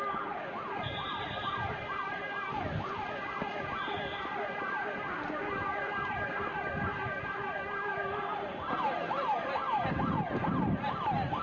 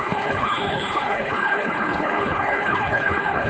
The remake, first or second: second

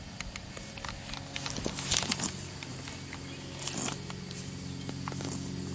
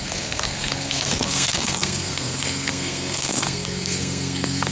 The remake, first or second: second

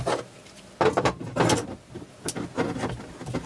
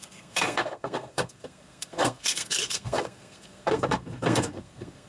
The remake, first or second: second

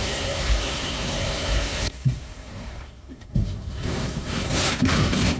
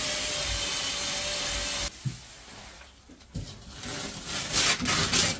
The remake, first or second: first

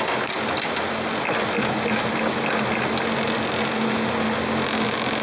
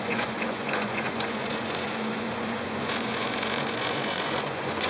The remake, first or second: second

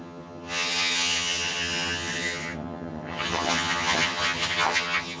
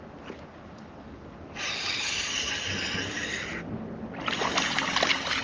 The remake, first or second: first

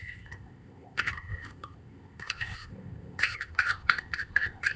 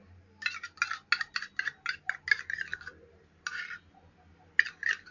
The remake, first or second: first